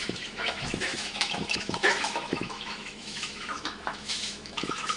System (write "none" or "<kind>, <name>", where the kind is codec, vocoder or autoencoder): autoencoder, DAC-VAE